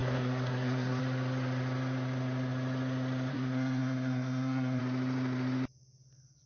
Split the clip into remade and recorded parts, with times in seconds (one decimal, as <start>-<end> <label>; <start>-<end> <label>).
0.0-1.0 remade; 1.0-3.3 recorded; 3.3-4.8 remade; 4.8-6.5 recorded